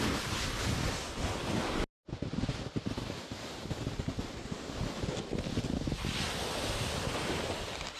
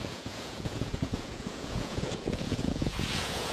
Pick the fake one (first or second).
second